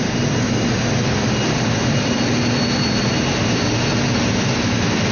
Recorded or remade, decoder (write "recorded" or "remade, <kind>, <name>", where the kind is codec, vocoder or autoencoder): recorded